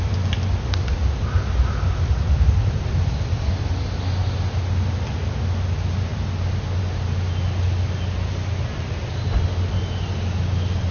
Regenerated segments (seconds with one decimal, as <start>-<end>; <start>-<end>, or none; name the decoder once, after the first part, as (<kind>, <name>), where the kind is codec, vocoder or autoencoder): none

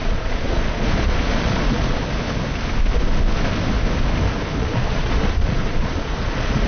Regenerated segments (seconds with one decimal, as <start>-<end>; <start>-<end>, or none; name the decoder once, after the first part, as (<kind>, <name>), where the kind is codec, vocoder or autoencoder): 0.0-2.0 (vocoder, Vocos); 4.6-6.7

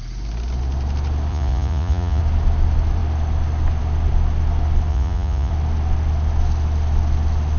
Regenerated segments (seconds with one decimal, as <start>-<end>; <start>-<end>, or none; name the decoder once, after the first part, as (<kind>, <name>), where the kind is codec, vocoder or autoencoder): 1.3-2.2 (vocoder, Vocos); 4.9-5.5

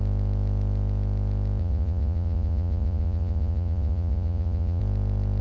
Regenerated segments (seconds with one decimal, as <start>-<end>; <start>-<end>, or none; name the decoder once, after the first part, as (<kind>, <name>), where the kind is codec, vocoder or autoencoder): 1.6-4.8 (vocoder, Vocos)

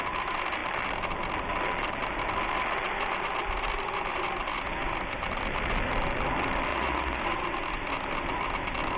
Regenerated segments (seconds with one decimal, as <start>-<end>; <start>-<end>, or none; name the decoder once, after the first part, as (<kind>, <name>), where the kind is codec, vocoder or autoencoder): 6.7-7.2 (vocoder, Vocos)